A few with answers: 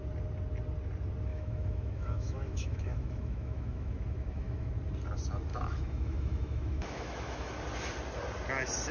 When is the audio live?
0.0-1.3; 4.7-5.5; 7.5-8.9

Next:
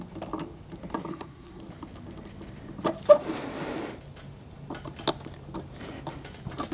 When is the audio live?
0.0-1.1; 1.6-6.7

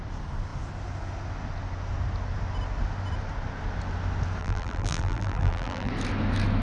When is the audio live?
0.0-4.4; 5.9-6.6

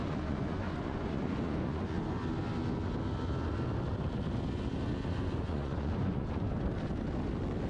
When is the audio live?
2.2-5.1; 6.7-7.7

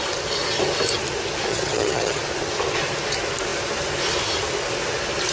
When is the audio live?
0.0-1.5; 2.2-5.3

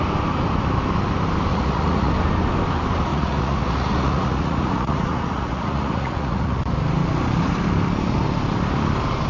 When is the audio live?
0.0-1.5; 2.1-3.1; 6.6-9.3